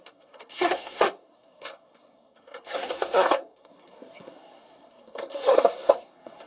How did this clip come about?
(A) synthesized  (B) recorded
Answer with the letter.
A